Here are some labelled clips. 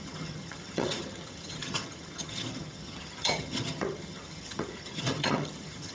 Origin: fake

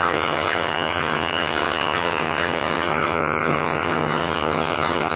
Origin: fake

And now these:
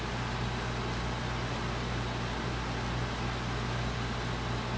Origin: real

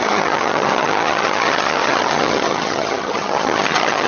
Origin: fake